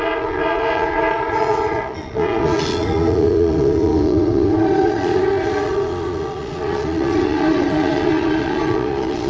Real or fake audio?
fake